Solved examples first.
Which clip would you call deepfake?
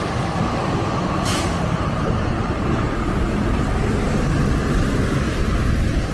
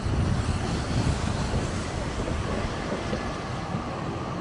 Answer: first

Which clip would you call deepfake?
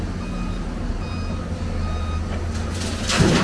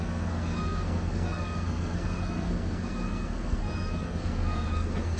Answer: second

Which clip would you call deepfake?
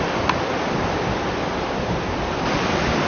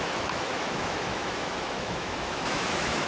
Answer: second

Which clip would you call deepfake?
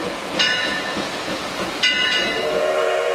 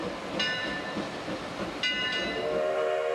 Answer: first